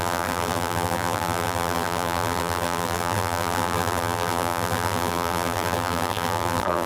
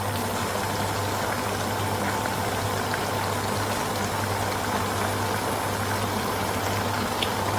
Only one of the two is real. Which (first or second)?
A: second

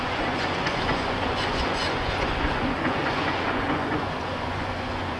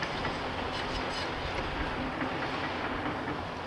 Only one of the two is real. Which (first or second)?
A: second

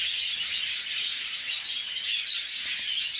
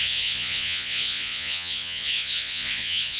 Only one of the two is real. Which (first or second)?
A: first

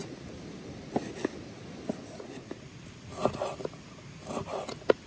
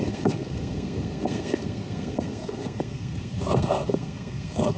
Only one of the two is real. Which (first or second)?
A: first